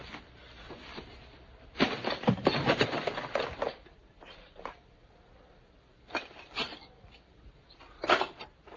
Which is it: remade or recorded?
recorded